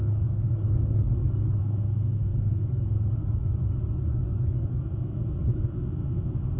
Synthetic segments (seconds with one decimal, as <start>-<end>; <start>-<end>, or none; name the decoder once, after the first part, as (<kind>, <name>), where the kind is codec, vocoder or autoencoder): 0.0-1.6 (codec, DAC); 2.3-4.8